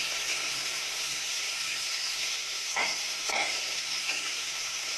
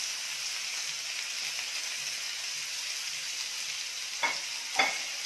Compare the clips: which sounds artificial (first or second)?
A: first